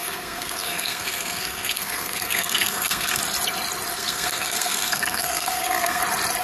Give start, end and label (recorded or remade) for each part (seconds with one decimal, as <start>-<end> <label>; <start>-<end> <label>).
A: 0.0-3.2 remade; 3.2-3.9 recorded; 3.9-6.0 remade; 6.0-6.4 recorded